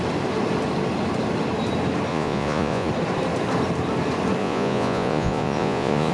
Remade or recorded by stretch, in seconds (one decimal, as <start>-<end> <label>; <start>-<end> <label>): 0.0-2.1 recorded; 2.1-2.9 remade; 2.9-4.4 recorded; 4.4-6.1 remade